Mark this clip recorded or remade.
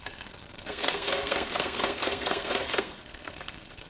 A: remade